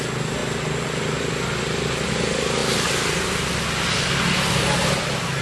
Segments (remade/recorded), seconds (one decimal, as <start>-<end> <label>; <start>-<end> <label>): 0.0-5.4 recorded